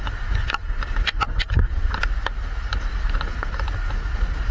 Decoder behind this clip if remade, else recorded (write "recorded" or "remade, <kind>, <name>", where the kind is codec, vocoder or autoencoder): recorded